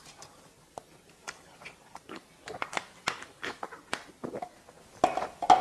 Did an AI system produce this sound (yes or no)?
no